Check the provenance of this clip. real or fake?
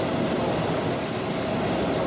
real